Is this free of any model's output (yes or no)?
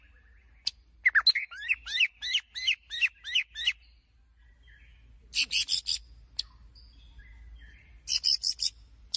yes